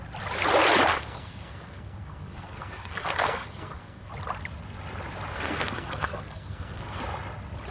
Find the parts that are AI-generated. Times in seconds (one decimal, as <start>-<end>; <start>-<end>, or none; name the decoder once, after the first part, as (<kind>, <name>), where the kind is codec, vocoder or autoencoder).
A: 0.9-4.1 (codec, SNAC); 5.3-7.0